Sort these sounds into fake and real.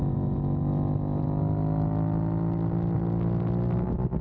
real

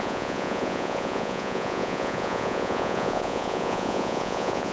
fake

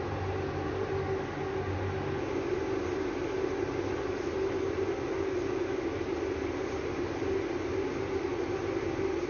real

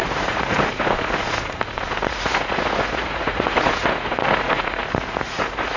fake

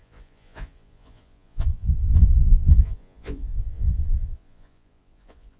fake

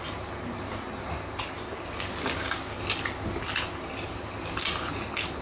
real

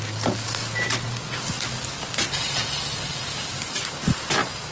real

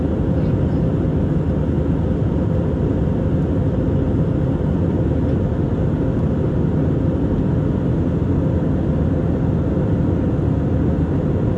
real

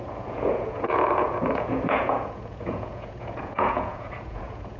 fake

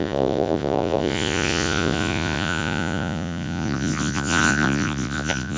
fake